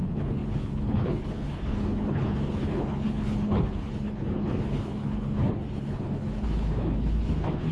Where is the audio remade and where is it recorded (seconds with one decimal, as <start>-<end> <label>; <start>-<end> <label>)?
0.0-7.7 remade